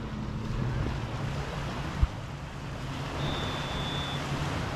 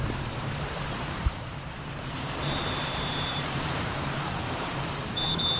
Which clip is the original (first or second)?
first